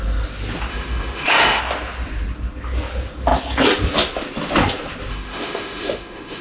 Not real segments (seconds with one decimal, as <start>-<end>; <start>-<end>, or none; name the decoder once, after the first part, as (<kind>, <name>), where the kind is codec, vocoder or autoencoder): 0.7-1.6 (autoencoder, DAC-VAE); 5.1-6.4